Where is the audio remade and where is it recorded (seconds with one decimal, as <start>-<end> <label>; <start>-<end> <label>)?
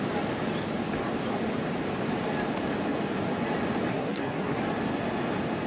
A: 0.0-3.9 recorded; 3.9-4.6 remade; 4.6-5.7 recorded